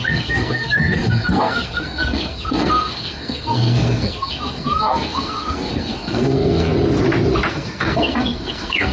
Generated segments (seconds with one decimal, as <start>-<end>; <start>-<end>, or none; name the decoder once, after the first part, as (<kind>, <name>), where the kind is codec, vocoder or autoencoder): 0.0-6.7 (codec, SNAC); 7.5-8.9